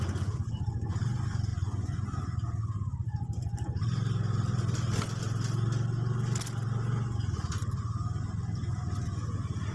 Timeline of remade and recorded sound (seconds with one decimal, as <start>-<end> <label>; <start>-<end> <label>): 0.0-1.5 recorded; 1.5-2.2 remade; 2.2-9.7 recorded